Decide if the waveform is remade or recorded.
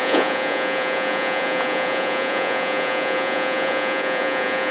remade